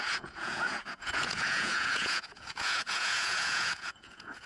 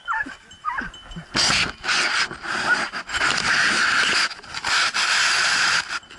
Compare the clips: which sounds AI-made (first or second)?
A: first